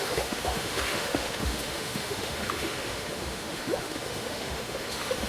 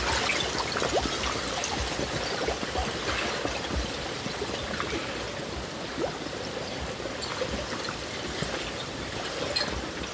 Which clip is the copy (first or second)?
first